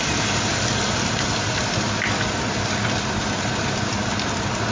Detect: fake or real real